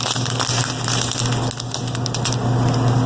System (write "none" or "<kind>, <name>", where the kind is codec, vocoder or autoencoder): none